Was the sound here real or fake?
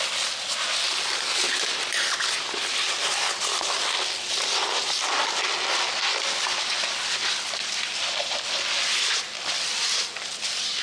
real